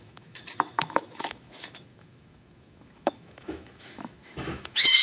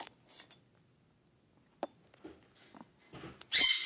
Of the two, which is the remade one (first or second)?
first